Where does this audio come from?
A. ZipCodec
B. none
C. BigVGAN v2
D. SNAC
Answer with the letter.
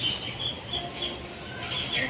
B